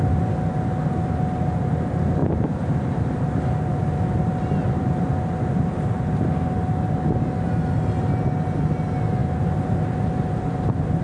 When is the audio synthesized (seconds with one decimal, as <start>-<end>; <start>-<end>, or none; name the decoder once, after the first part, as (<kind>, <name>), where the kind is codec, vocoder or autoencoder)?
3.7-5.9 (vocoder, BigVGAN v2)